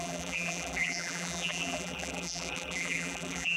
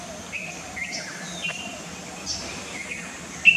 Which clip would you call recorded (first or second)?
second